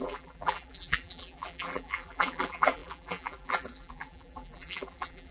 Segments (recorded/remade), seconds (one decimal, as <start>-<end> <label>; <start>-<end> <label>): 0.0-5.3 remade